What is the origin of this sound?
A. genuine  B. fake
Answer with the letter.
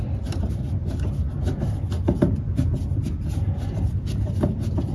A